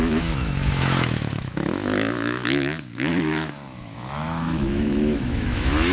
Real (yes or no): no